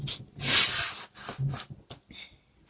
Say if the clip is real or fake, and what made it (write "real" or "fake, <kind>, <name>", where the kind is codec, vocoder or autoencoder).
real